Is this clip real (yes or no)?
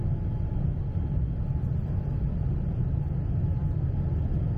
yes